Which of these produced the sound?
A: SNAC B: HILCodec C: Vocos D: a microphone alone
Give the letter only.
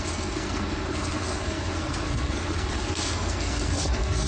A